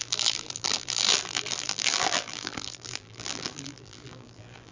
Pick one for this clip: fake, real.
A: fake